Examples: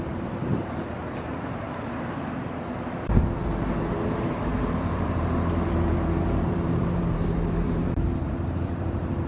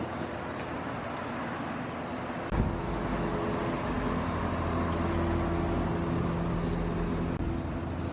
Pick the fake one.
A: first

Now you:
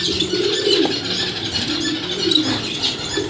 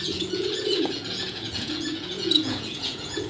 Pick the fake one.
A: second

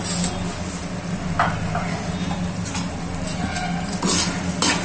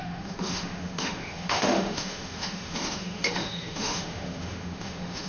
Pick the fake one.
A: second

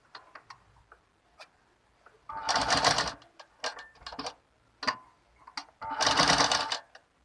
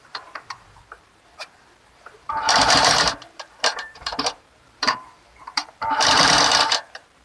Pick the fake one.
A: second